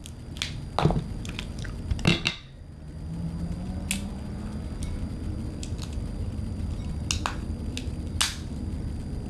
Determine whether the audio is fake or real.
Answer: real